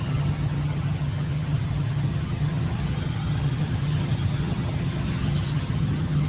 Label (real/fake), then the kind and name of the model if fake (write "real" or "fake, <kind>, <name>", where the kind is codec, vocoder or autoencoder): fake, vocoder, HiFi-GAN